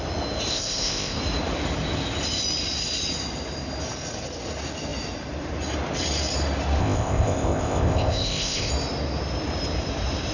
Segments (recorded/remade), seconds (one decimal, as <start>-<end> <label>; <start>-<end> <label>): 0.0-0.5 recorded; 0.5-1.2 remade; 1.2-6.8 recorded; 6.8-8.7 remade; 8.7-10.3 recorded